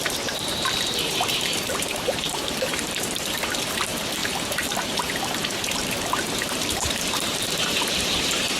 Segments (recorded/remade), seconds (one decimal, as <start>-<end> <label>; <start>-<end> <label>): 0.0-8.6 remade